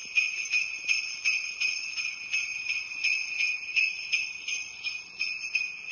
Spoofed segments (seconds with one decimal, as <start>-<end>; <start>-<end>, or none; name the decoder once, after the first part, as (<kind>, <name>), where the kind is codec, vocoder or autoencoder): 0.0-3.3 (vocoder, BigVGAN v2); 3.7-4.9